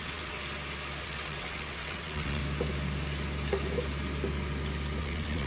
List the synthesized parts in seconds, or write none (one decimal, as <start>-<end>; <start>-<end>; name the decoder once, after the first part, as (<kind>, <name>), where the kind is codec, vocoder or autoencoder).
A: 0.0-0.4 (vocoder, WaveNeXt); 1.0-2.4; 5.0-5.5